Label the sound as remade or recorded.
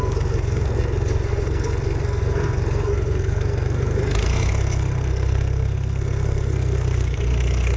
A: remade